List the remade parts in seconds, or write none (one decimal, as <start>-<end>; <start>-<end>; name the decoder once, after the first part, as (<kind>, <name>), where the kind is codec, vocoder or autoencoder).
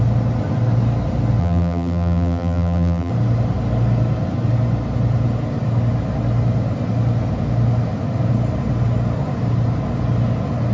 1.4-3.1 (vocoder, BigVGAN v2)